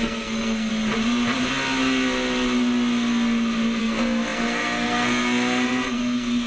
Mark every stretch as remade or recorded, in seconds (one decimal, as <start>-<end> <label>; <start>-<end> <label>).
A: 0.0-0.7 remade; 0.7-3.8 recorded; 3.8-6.5 remade